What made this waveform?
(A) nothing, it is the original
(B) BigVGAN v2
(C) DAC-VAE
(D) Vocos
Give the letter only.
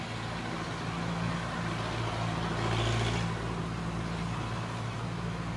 A